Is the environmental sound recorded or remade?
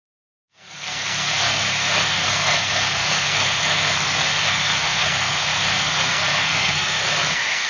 remade